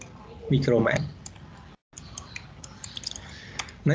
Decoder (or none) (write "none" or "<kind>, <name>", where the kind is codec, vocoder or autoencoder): none